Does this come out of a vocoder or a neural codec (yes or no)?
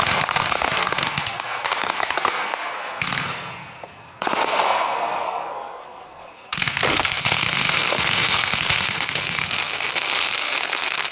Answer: yes